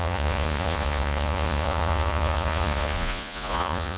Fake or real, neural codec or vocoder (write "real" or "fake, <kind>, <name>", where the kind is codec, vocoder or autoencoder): fake, vocoder, Vocos